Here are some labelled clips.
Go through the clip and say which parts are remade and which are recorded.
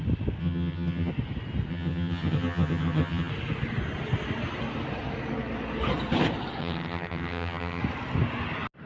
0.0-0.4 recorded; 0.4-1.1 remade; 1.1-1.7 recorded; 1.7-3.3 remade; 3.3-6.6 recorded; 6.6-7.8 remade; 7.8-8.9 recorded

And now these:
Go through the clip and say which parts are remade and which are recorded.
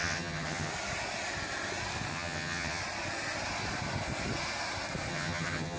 0.0-0.7 remade; 0.7-2.1 recorded; 2.1-2.8 remade; 2.8-5.1 recorded; 5.1-5.8 remade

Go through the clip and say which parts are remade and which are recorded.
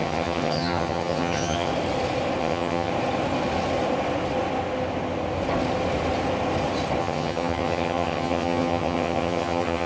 0.0-1.7 remade; 1.7-2.4 recorded; 2.4-2.9 remade; 2.9-7.0 recorded; 7.0-9.9 remade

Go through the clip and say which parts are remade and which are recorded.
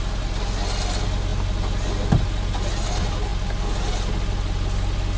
0.0-5.2 recorded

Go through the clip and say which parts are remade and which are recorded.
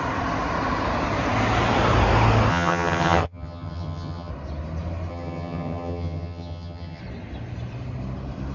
0.0-2.5 recorded; 2.5-4.3 remade; 4.3-5.1 recorded; 5.1-7.0 remade; 7.0-8.5 recorded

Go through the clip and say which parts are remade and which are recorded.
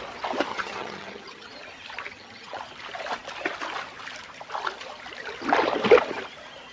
0.0-0.5 recorded; 0.5-1.5 remade; 1.5-2.1 recorded; 2.1-2.6 remade; 2.6-6.7 recorded